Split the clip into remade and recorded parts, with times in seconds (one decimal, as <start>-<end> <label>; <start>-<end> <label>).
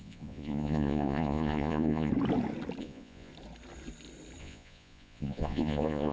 0.0-2.1 remade; 2.1-2.8 recorded; 2.8-3.3 remade; 3.3-4.4 recorded; 4.4-6.1 remade